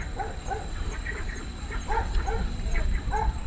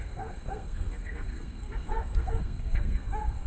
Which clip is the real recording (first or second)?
first